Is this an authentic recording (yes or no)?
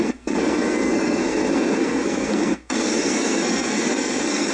no